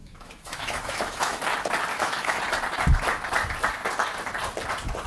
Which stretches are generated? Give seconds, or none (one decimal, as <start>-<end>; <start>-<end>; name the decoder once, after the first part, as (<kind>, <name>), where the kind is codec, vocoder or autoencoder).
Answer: 0.0-1.4 (autoencoder, DAC-VAE); 1.9-2.4